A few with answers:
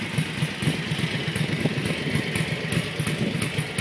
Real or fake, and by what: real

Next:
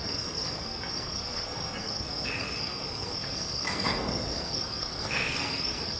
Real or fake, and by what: fake, codec, SNAC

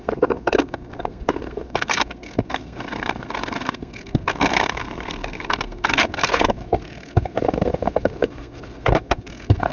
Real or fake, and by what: fake, codec, SNAC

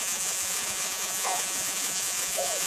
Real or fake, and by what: fake, vocoder, Vocos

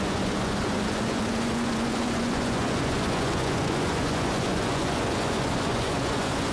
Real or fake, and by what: fake, vocoder, Vocos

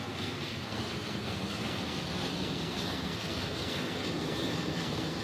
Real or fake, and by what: fake, codec, SNAC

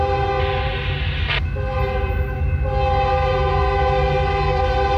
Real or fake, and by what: real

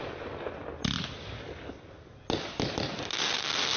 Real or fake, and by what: real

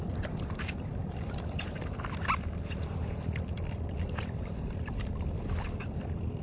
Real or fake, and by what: real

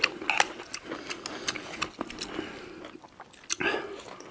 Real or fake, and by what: real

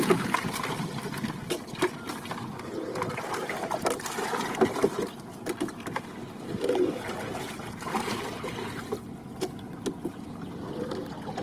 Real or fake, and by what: real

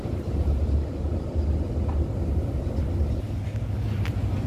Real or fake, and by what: fake, vocoder, BigVGAN v2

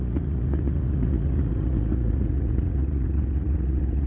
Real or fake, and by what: fake, vocoder, Vocos